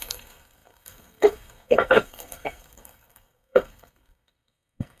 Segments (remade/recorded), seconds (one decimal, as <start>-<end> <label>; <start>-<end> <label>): 0.0-5.0 remade

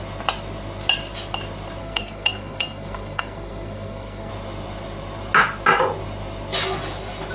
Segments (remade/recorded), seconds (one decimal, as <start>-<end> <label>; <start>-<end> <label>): 0.0-1.8 recorded; 1.8-4.3 remade; 4.3-7.3 recorded

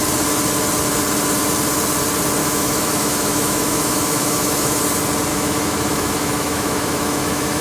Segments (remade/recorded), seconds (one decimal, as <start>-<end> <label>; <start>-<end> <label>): 0.0-2.4 recorded; 2.4-4.8 remade; 4.8-5.3 recorded; 5.3-7.6 remade

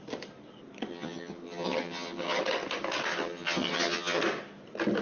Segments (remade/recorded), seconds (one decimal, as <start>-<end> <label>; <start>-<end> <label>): 0.0-0.9 recorded; 0.9-2.4 remade; 2.4-3.1 recorded; 3.1-4.2 remade; 4.2-5.0 recorded